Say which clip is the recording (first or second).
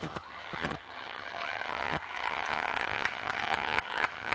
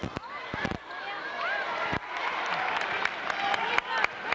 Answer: second